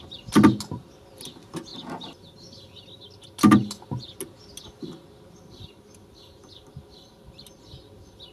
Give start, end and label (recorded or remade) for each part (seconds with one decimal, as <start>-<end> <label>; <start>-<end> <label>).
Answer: 0.0-8.3 recorded